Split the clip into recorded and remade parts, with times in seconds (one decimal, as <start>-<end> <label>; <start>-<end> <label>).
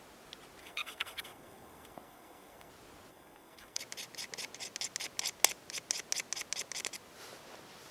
0.0-0.6 recorded; 0.6-2.7 remade; 2.7-3.1 recorded; 3.1-3.8 remade; 3.8-7.9 recorded